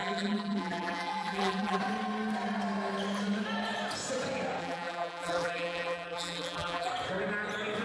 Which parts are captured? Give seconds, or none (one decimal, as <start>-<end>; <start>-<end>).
1.8-4.6; 6.9-7.8